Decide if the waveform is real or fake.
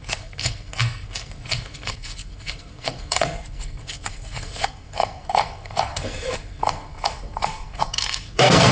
fake